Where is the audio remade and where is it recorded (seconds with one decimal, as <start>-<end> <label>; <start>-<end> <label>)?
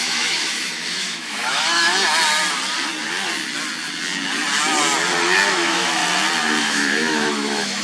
0.0-1.9 remade; 1.9-5.5 recorded; 5.5-6.0 remade; 6.0-6.6 recorded; 6.6-7.8 remade